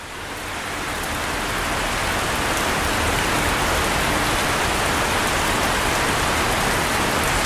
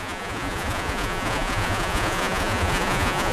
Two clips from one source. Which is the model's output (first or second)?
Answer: second